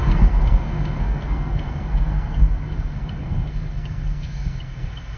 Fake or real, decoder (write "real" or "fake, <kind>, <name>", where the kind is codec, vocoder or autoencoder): fake, codec, SNAC